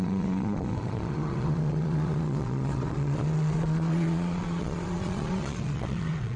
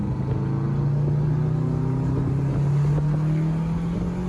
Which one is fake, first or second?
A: first